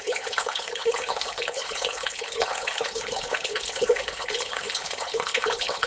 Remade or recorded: remade